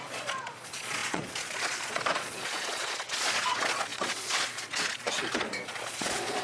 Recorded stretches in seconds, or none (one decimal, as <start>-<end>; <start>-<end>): none